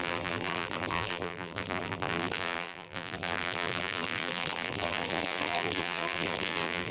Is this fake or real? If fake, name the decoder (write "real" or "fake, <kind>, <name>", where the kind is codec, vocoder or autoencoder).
fake, vocoder, BigVGAN v2